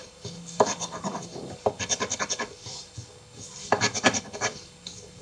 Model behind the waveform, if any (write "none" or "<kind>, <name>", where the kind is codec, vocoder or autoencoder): codec, DAC